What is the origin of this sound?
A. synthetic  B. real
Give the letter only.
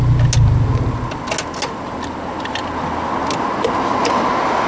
B